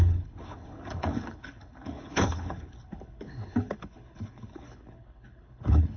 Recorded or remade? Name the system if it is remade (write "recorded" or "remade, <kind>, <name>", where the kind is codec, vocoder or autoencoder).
remade, codec, HILCodec